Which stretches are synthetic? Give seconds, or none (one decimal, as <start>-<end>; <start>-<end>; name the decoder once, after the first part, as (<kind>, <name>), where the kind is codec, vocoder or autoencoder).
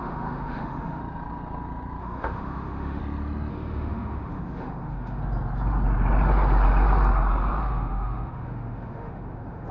0.0-1.0 (autoencoder, DAC-VAE); 2.0-3.0; 3.5-5.2; 7.6-9.7